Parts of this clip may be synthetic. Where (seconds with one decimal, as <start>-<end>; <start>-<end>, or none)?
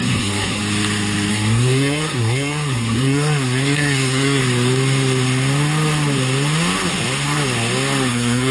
0.0-0.6; 1.3-4.4; 8.1-8.5